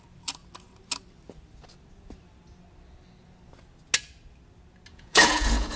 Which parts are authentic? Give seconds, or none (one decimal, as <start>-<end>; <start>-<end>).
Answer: 0.0-4.9